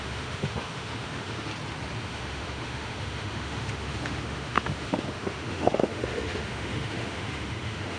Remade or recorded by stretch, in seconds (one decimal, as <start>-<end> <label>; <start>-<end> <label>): 0.0-1.5 remade; 1.5-2.0 recorded; 2.0-8.0 remade